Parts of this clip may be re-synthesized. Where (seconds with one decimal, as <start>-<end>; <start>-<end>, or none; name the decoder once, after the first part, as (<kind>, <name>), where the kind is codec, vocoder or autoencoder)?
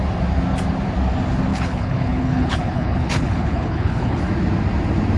1.5-4.2 (codec, HILCodec)